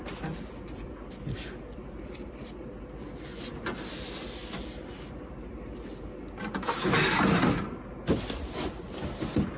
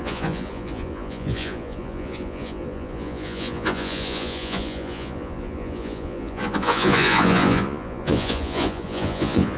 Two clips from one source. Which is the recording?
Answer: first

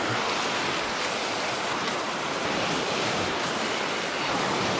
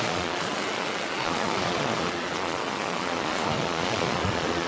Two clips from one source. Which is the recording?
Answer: first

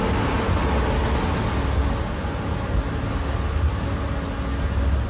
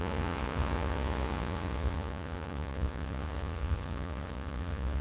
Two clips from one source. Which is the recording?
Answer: first